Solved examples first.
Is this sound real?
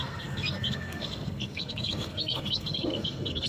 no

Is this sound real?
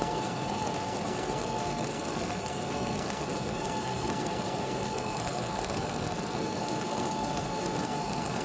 no